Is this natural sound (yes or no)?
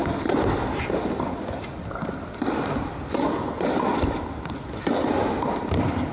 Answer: yes